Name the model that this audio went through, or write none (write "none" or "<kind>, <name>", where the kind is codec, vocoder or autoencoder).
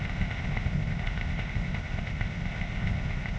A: codec, ZipCodec